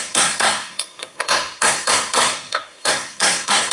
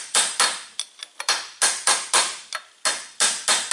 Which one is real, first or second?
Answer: second